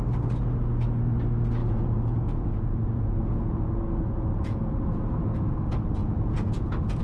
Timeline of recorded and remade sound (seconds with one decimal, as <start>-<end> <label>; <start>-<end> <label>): 0.0-1.6 recorded; 1.6-5.0 remade; 5.0-6.0 recorded; 6.0-7.0 remade